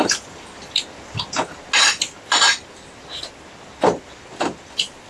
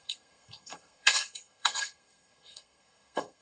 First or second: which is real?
first